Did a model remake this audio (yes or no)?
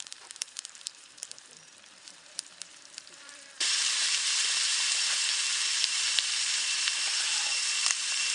yes